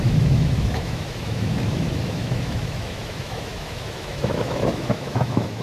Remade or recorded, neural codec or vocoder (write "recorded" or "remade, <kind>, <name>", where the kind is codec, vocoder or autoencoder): remade, autoencoder, DAC-VAE